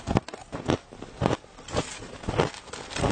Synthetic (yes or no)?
no